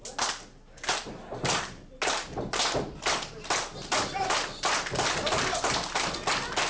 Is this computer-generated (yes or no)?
no